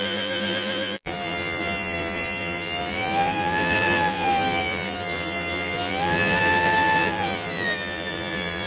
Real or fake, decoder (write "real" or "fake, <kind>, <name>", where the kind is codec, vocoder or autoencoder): fake, vocoder, BigVGAN v2